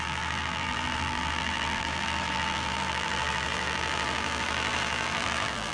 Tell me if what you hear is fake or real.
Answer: fake